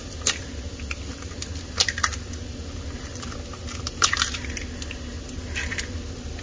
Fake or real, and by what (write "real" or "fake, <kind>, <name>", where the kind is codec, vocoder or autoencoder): real